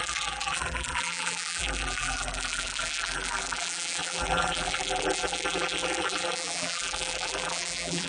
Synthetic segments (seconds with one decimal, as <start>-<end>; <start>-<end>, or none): 0.0-8.1